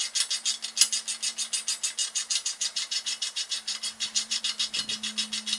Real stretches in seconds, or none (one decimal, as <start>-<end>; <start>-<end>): 0.0-2.0; 4.4-5.6